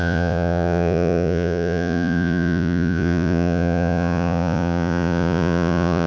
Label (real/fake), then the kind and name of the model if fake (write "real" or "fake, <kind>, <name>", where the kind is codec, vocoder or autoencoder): fake, vocoder, Vocos